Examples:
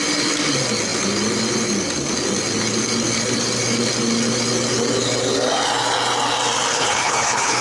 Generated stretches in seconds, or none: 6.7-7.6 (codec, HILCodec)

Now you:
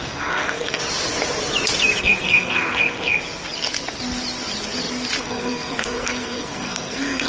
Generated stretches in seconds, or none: 0.0-0.8 (codec, SNAC); 2.0-3.2; 5.2-7.3

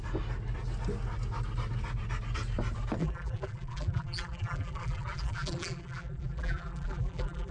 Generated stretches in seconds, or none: 3.0-7.5 (vocoder, BigVGAN v2)

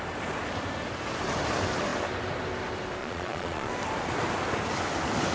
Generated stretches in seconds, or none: 3.0-3.7 (vocoder, Vocos)

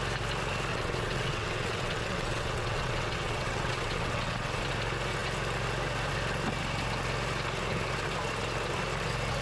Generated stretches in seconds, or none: 0.7-4.6 (vocoder, WaveNeXt)

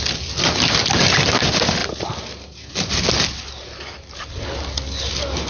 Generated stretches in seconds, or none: none